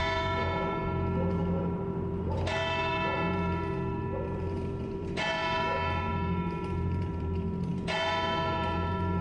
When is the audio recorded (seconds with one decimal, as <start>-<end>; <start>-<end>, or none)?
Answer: none